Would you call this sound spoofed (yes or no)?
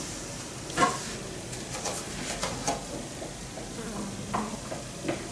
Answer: no